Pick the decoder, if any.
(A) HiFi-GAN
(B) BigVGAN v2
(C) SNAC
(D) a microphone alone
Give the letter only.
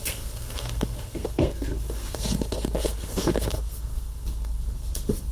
C